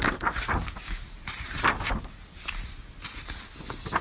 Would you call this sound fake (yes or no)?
no